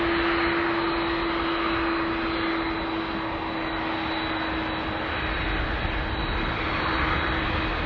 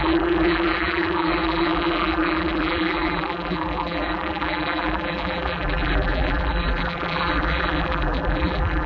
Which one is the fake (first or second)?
second